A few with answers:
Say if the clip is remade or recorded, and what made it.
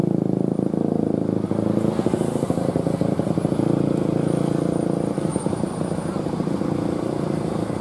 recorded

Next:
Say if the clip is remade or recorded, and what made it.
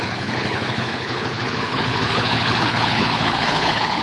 remade, codec, HILCodec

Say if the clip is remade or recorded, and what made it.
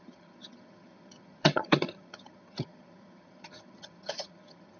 remade, vocoder, HiFi-GAN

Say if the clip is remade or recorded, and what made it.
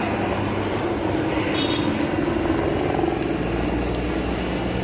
recorded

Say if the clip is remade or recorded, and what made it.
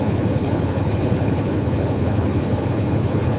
remade, codec, HILCodec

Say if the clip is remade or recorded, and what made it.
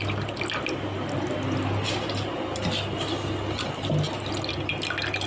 recorded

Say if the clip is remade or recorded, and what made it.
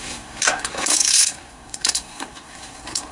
remade, codec, SNAC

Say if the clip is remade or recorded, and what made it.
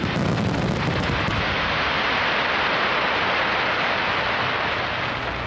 recorded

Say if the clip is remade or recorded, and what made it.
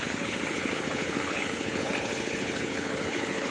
remade, codec, HILCodec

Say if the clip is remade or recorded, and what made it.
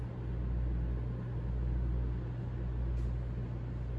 recorded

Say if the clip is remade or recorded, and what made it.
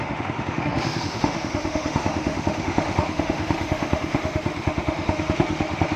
remade, autoencoder, DAC-VAE